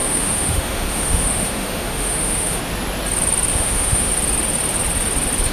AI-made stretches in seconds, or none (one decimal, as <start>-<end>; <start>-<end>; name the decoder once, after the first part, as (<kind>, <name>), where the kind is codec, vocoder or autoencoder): 0.0-2.6 (autoencoder, DAC-VAE); 3.5-4.1